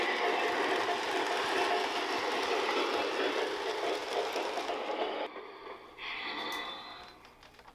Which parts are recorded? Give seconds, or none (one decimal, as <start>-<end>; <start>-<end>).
0.0-7.7